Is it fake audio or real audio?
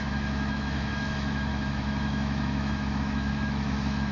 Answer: fake